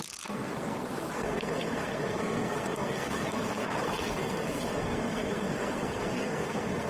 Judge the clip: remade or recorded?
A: remade